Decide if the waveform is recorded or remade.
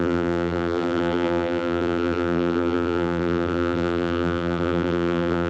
remade